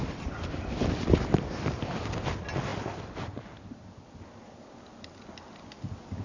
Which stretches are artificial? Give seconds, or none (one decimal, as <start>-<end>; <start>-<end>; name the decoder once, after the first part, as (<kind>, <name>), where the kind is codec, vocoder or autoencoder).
none